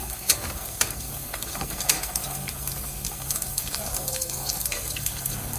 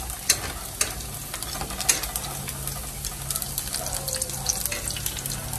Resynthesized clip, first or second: first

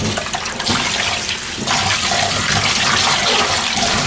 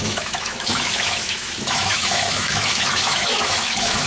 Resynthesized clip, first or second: second